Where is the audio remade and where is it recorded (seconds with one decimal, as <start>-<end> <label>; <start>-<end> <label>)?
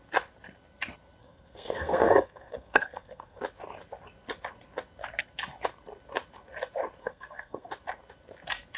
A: 0.0-1.2 recorded; 1.2-3.4 remade; 3.4-7.0 recorded; 7.0-7.7 remade; 7.7-8.8 recorded